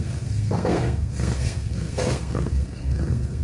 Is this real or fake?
fake